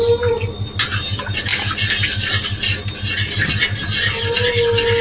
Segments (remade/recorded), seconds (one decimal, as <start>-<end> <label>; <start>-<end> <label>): 0.0-5.0 recorded

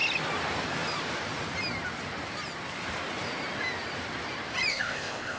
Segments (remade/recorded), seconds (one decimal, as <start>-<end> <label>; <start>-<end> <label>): 0.0-4.7 recorded; 4.7-5.4 remade

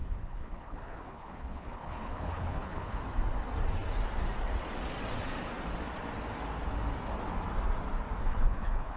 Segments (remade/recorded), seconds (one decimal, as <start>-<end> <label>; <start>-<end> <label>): 0.0-3.0 remade; 3.0-8.2 recorded; 8.2-9.0 remade

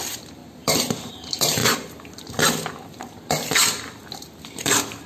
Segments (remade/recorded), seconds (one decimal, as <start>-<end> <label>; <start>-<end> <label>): 0.0-5.1 recorded

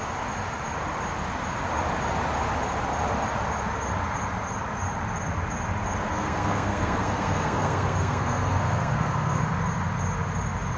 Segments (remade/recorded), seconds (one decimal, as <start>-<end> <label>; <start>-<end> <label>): 0.0-6.1 recorded; 6.1-9.4 remade; 9.4-10.8 recorded

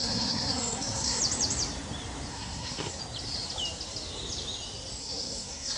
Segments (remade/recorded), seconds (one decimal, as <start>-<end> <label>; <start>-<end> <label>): 0.0-1.2 remade; 1.2-2.3 recorded; 2.3-3.0 remade; 3.0-5.0 recorded; 5.0-5.8 remade